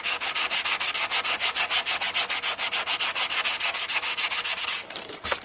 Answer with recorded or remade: recorded